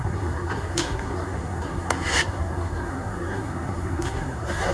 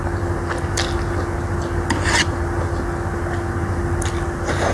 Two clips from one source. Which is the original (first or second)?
second